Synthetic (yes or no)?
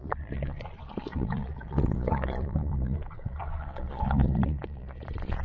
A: yes